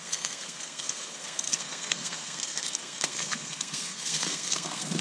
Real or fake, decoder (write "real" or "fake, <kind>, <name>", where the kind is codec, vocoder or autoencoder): fake, codec, SNAC